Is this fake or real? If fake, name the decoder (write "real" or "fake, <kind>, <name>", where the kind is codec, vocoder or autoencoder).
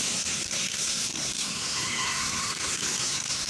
fake, codec, SNAC